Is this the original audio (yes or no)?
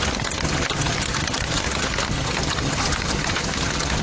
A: no